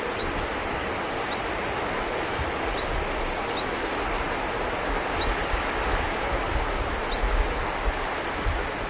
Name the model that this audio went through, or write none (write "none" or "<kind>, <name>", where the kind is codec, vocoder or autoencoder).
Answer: none